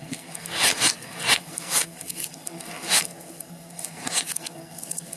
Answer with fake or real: fake